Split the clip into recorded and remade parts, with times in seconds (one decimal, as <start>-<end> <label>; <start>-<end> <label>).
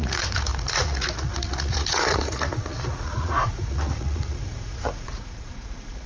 0.0-6.1 remade